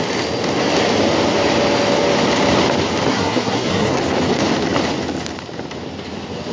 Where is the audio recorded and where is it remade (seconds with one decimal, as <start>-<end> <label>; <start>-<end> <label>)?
0.0-3.1 recorded; 3.1-4.0 remade; 4.0-6.5 recorded